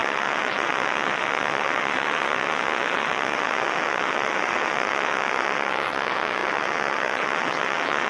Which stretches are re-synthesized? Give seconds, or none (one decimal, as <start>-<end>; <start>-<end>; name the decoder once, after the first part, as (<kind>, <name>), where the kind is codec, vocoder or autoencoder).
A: 0.0-8.1 (vocoder, WaveNeXt)